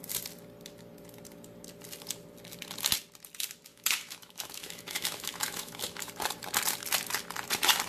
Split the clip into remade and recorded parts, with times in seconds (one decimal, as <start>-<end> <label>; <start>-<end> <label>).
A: 0.0-3.7 recorded; 3.7-6.0 remade; 6.0-7.9 recorded